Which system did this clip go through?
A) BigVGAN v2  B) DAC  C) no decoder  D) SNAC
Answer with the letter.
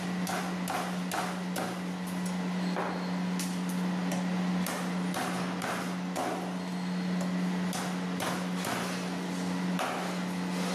C